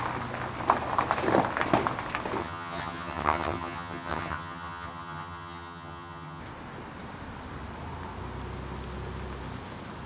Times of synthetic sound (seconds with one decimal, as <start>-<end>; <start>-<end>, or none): 2.4-6.4